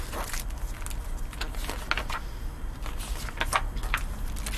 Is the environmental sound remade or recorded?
recorded